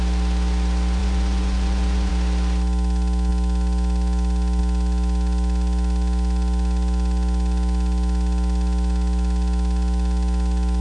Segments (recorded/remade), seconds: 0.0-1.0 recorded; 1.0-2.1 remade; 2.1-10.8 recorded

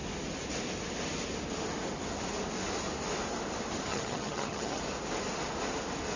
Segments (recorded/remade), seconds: 0.0-3.9 recorded; 3.9-4.8 remade; 4.8-6.2 recorded

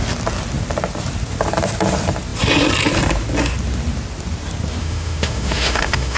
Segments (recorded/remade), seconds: 0.0-4.8 recorded; 4.8-6.2 remade

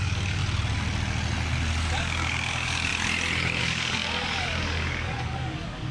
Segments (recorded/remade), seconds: 0.0-0.4 remade; 0.4-2.0 recorded; 2.0-2.9 remade; 2.9-3.6 recorded; 3.6-5.9 remade

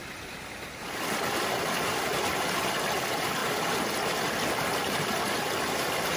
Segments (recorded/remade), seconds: 0.0-6.2 remade